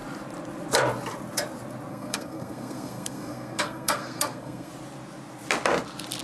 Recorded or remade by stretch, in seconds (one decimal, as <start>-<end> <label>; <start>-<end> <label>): 0.0-1.9 recorded; 1.9-4.7 remade; 4.7-6.2 recorded